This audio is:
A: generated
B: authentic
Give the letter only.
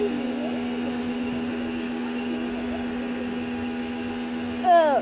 B